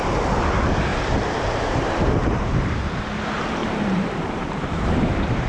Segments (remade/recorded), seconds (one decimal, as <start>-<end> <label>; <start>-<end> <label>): 0.0-0.9 recorded; 0.9-2.8 remade; 2.8-3.6 recorded; 3.6-5.5 remade